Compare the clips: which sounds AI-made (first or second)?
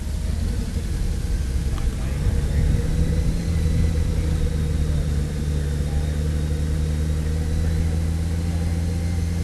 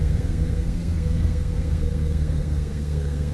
second